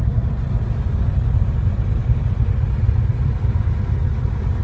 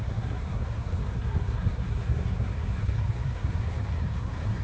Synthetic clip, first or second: second